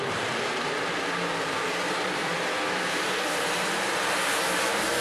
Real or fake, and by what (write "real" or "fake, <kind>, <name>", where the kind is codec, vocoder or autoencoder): fake, vocoder, BigVGAN v2